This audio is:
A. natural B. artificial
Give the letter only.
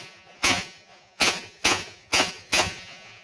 B